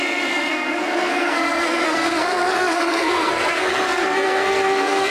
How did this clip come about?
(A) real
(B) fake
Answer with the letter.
B